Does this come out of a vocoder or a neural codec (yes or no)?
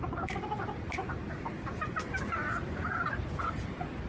yes